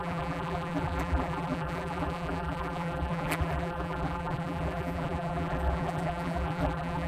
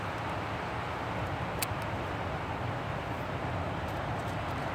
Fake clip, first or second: first